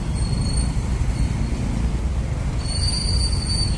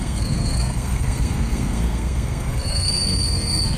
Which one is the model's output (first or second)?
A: second